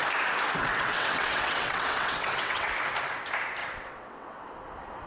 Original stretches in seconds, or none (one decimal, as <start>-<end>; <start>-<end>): 0.0-0.6; 2.7-3.6; 4.5-5.1